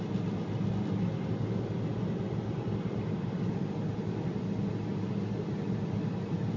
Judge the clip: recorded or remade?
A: recorded